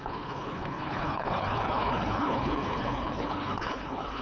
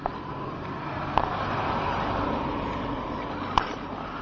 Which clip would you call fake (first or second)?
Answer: first